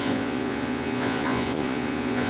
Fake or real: fake